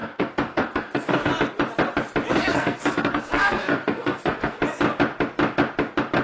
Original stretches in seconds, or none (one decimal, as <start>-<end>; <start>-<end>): 1.3-2.3; 4.6-6.2

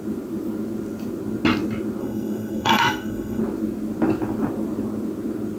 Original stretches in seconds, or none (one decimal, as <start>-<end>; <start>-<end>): 0.0-2.0; 3.4-5.6

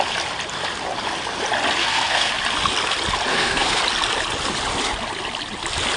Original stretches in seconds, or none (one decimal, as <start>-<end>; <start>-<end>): 0.0-1.8; 2.3-3.3; 3.8-6.0

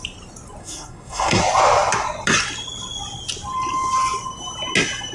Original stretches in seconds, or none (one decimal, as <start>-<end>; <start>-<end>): 0.0-0.6; 1.4-5.1